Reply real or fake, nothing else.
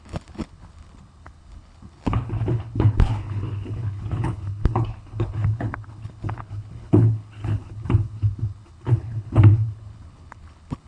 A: fake